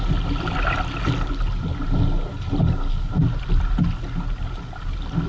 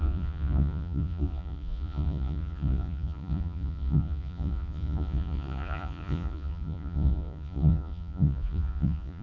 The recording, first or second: first